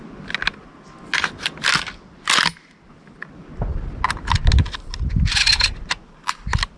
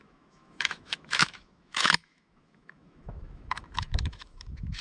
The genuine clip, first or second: first